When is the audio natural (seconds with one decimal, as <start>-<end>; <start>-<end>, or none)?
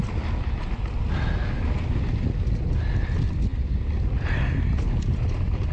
0.0-5.7